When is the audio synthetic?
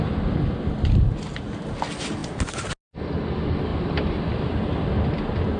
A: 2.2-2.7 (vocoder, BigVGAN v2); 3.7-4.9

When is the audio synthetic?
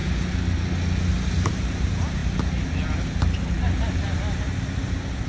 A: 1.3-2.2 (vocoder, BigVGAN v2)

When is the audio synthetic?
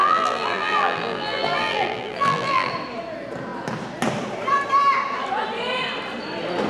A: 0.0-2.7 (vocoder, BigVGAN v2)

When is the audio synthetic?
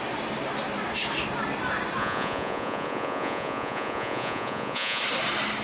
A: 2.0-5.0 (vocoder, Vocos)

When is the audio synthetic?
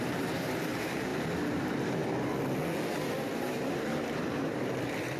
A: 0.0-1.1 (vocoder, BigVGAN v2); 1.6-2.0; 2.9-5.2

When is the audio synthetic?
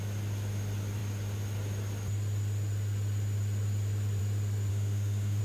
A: 4.7-5.4 (autoencoder, DAC-VAE)